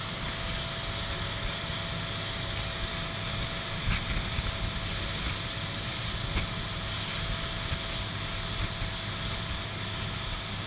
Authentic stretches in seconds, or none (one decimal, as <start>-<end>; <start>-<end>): 0.0-10.7